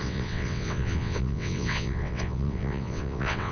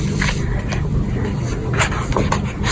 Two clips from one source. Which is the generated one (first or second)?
first